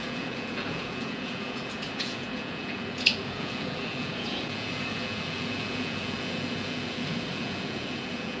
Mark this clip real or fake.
fake